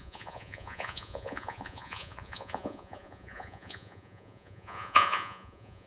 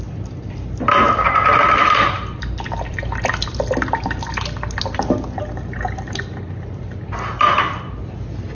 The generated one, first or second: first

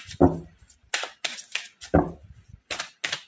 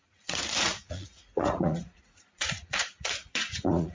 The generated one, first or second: second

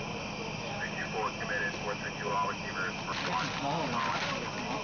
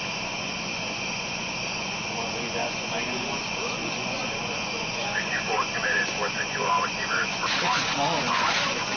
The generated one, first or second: second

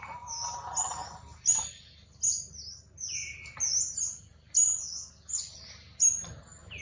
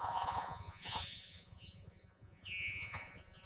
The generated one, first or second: second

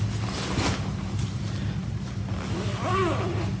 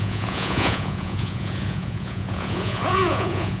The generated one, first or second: second